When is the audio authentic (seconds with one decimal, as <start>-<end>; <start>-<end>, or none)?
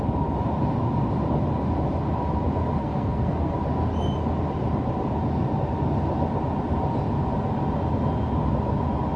0.0-2.8; 3.5-9.2